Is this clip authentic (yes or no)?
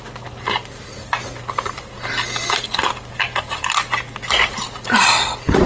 yes